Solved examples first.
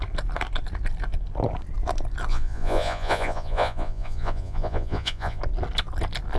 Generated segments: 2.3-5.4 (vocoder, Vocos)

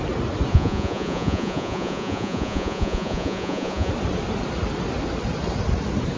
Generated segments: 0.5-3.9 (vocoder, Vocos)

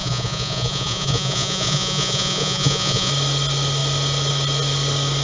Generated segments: 0.0-3.1 (vocoder, Vocos)